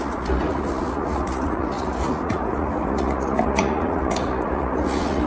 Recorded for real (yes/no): no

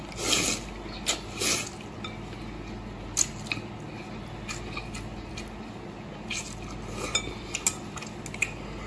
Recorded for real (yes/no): yes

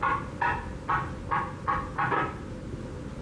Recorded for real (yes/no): yes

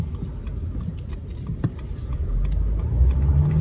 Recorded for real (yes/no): yes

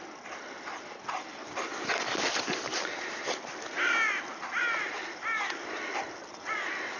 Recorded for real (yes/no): yes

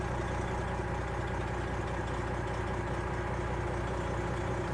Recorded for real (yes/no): yes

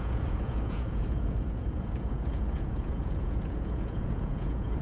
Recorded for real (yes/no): no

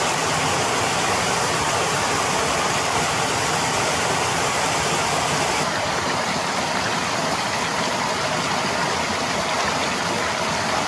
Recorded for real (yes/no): yes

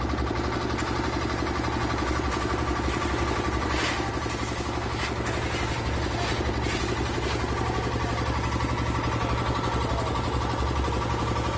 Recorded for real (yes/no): yes